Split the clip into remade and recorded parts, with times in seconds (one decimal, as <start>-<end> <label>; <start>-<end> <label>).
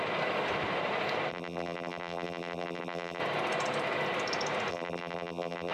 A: 0.0-1.3 recorded; 1.3-3.2 remade; 3.2-4.7 recorded; 4.7-5.7 remade